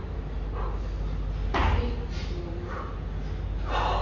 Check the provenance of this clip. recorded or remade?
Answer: recorded